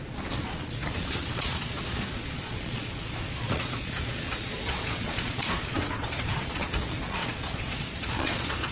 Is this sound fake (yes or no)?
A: yes